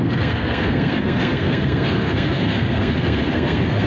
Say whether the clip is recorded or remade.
remade